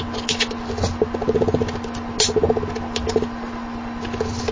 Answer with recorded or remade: recorded